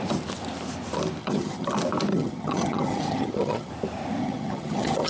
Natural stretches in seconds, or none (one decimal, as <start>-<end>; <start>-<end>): 0.0-1.2; 1.7-2.1; 3.7-4.2